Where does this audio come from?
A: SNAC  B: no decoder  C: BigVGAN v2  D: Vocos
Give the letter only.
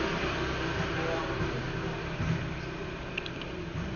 B